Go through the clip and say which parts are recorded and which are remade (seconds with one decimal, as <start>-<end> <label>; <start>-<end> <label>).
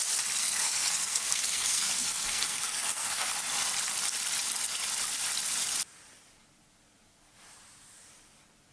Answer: 0.0-0.4 recorded; 0.4-3.3 remade; 3.3-8.7 recorded